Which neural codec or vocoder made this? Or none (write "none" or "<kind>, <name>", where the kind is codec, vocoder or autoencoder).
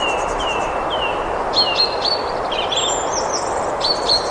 vocoder, BigVGAN v2